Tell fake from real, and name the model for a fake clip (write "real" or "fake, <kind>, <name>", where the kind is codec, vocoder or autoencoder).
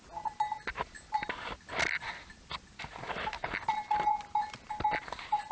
real